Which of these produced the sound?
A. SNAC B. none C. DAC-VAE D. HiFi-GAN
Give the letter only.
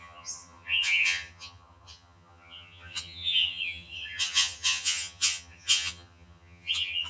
D